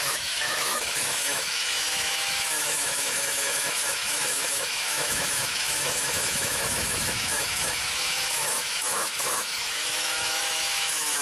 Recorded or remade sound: remade